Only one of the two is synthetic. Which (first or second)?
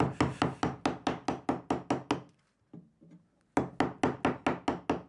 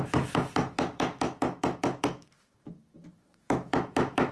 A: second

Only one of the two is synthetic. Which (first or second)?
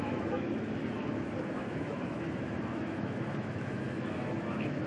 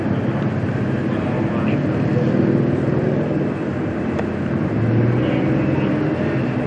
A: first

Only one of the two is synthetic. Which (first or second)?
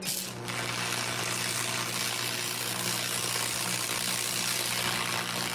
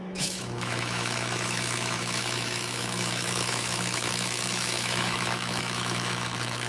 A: second